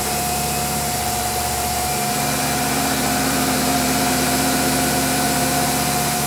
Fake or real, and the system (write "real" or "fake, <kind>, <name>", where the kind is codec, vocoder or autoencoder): fake, vocoder, BigVGAN v2